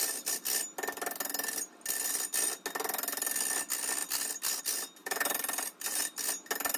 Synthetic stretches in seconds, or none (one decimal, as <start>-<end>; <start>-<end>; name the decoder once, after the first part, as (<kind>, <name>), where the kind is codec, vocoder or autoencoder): 5.0-6.0 (vocoder, BigVGAN v2)